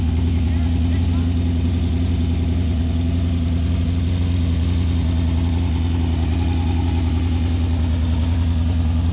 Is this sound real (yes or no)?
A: yes